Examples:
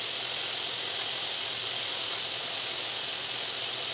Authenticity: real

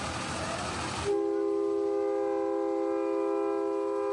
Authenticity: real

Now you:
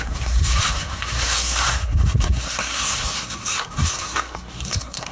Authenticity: fake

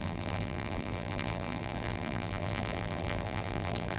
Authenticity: fake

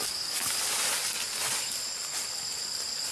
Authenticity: real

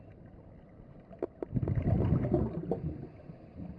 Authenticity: real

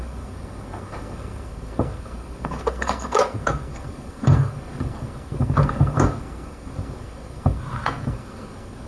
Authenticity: fake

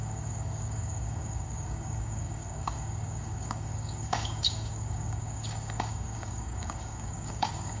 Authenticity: fake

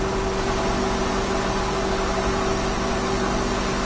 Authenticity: real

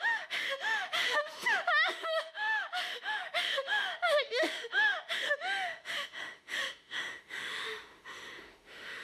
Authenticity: fake